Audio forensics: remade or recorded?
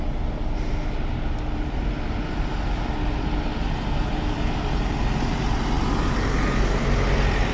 recorded